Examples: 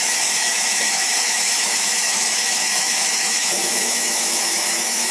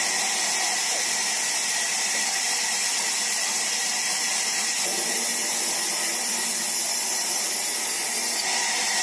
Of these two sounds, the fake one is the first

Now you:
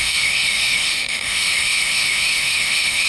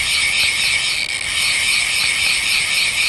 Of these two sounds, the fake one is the first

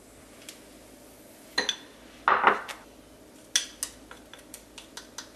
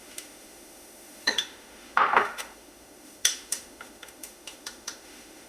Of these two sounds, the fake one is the second